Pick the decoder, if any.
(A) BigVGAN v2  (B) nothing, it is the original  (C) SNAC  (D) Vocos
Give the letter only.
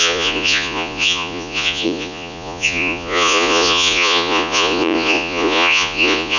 D